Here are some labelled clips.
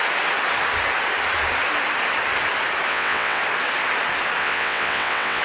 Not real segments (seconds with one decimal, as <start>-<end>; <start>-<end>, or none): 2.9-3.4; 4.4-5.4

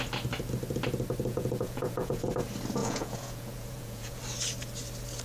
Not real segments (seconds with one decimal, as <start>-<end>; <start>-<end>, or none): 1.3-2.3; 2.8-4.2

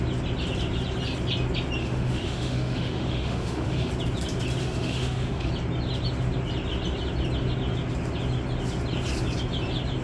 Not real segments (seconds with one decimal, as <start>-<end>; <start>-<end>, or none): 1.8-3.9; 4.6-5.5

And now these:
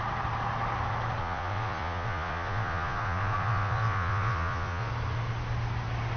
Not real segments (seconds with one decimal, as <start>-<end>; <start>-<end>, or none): 1.2-4.9

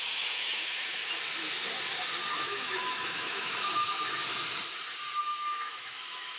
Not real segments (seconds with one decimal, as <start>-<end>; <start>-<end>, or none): 0.0-1.0; 2.3-4.2; 5.2-6.4

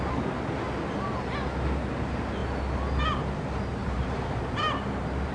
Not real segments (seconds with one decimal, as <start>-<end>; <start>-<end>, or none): 3.8-4.6

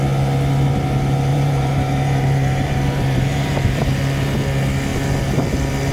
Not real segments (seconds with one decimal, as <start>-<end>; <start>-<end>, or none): 1.3-4.0

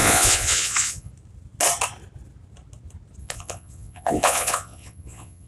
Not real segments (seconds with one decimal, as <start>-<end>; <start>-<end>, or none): 0.0-1.1; 3.2-5.5